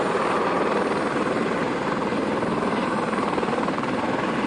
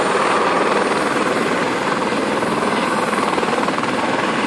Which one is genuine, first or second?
second